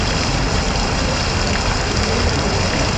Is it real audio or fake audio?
real